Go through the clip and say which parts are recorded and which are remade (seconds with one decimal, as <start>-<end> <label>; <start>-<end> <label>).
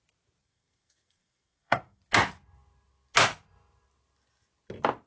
0.0-0.4 recorded; 0.4-2.0 remade; 2.0-5.1 recorded